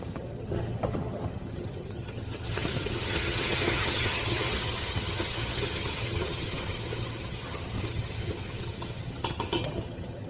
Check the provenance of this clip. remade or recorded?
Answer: remade